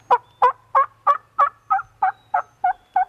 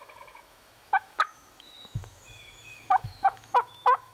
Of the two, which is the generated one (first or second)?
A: second